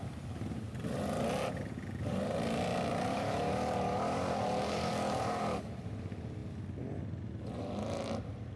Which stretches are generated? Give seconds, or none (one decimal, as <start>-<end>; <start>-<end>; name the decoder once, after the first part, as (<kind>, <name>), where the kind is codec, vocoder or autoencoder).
3.1-5.7 (codec, DAC)